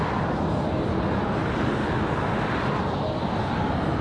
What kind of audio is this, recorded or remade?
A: recorded